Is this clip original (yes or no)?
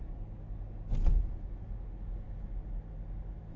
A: yes